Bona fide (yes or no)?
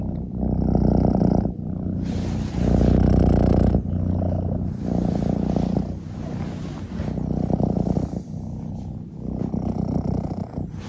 yes